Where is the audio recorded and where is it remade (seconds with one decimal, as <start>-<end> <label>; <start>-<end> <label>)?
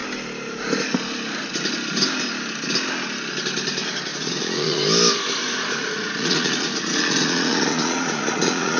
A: 0.0-4.1 recorded; 4.1-4.8 remade; 4.8-5.4 recorded; 5.4-8.8 remade